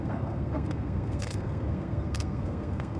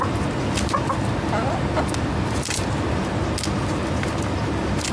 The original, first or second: second